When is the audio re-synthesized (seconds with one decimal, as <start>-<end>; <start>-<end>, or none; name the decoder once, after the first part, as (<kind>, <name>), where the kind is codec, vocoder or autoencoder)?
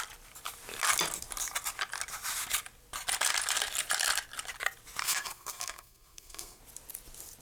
5.0-6.6 (codec, SNAC)